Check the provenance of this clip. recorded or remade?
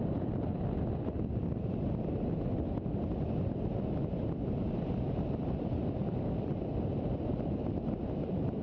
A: recorded